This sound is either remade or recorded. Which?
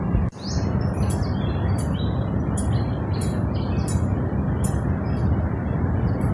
recorded